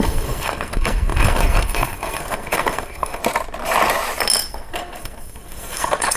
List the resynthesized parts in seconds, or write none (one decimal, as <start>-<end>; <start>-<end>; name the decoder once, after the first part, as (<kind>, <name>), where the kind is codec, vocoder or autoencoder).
0.0-3.2 (codec, SNAC); 4.5-6.2